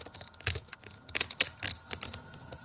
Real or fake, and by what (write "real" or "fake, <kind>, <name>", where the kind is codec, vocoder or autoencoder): real